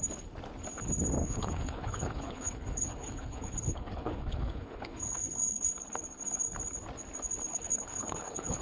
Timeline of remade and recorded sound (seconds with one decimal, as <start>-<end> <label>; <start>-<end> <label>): 0.0-1.2 recorded; 1.2-5.7 remade; 5.7-7.5 recorded; 7.5-8.6 remade